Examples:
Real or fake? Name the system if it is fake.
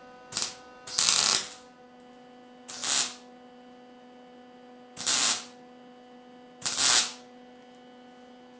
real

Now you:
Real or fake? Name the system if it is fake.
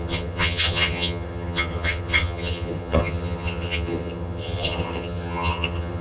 fake, vocoder, HiFi-GAN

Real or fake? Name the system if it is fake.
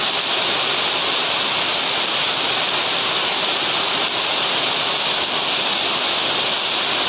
real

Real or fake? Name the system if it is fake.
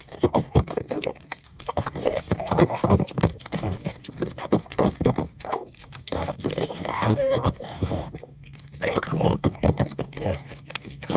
fake, codec, DAC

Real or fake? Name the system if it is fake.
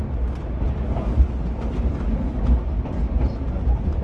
real